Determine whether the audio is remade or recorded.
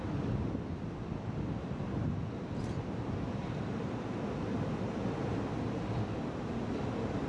recorded